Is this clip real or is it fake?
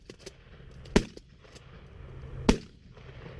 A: real